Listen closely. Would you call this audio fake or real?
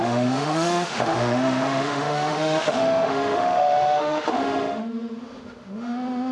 fake